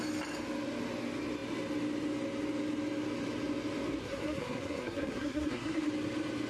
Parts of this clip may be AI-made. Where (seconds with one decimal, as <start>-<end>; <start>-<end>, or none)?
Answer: 4.0-5.9